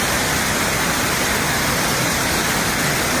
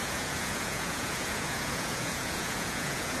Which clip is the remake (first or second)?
second